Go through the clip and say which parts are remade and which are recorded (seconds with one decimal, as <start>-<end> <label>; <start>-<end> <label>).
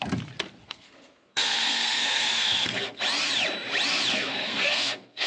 0.0-0.6 recorded; 0.6-3.0 remade; 3.0-4.1 recorded; 4.1-5.3 remade